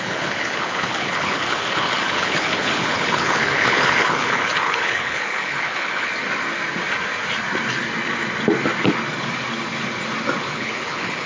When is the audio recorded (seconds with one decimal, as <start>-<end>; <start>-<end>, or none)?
6.1-10.4

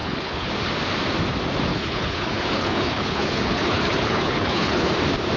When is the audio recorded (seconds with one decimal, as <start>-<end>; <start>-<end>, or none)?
0.5-1.7; 4.9-5.4

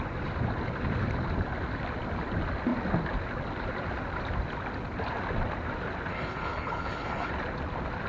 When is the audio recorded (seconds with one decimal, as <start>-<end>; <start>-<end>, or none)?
0.0-6.1; 7.3-8.1

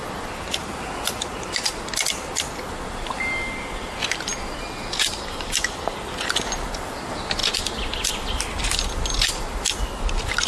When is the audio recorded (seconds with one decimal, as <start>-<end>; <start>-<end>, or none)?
0.0-10.5

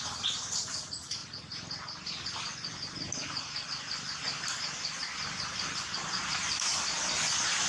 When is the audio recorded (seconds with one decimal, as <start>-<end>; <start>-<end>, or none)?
0.0-7.7

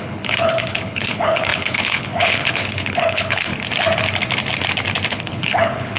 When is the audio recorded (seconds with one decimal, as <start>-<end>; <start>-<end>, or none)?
3.5-5.1